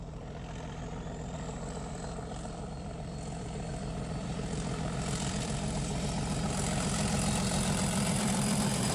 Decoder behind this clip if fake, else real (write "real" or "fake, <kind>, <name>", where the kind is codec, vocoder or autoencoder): fake, vocoder, BigVGAN v2